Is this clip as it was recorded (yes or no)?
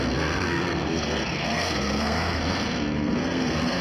no